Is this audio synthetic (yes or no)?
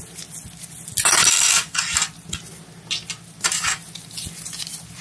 no